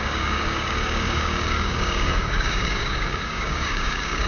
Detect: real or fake fake